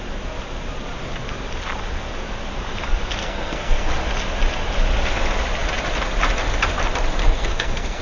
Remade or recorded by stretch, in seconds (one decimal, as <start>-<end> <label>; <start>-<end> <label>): 0.0-3.2 recorded; 3.2-3.9 remade; 3.9-7.2 recorded; 7.2-8.0 remade